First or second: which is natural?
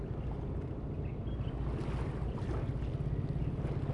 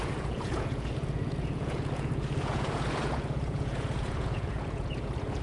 first